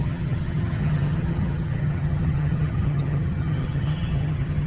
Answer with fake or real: fake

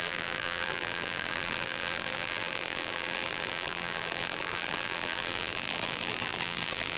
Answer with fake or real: fake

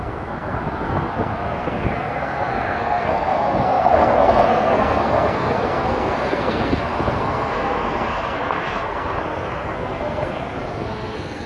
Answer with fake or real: fake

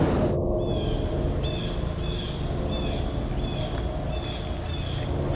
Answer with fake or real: real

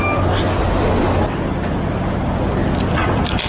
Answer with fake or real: real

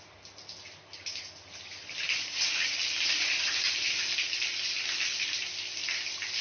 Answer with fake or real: real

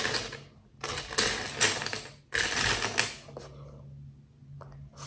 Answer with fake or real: real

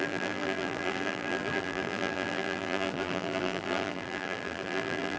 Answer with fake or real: fake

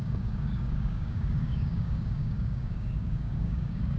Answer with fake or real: fake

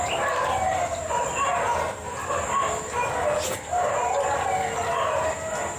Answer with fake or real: real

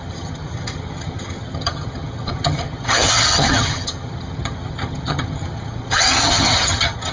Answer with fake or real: fake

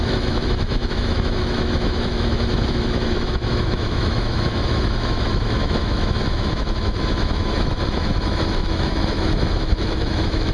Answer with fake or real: fake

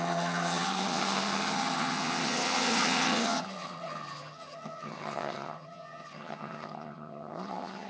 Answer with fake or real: fake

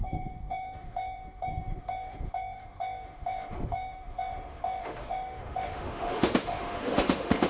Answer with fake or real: fake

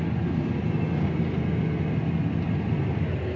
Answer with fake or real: real